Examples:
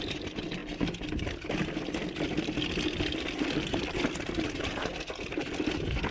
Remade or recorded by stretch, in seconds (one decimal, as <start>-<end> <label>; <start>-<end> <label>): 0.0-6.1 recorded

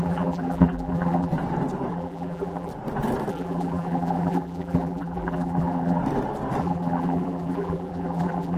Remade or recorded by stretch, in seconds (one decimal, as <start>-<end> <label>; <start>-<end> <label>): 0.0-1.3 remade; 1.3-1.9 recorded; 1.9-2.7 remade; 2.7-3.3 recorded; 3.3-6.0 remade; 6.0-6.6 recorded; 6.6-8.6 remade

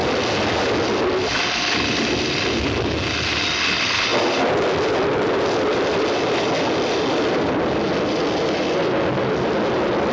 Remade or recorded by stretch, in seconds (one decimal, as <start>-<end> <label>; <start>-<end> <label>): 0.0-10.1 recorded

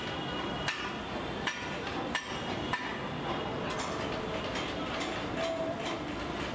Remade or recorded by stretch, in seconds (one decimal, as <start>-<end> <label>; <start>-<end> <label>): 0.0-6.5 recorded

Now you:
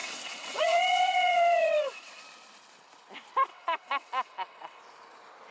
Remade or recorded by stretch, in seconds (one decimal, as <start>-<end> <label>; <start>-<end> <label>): 0.0-2.2 remade; 2.2-3.5 recorded; 3.5-4.8 remade; 4.8-5.5 recorded

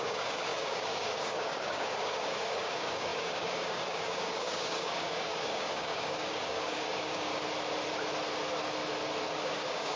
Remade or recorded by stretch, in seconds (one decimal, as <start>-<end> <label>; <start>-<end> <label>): 0.0-7.3 remade; 7.3-9.3 recorded; 9.3-10.0 remade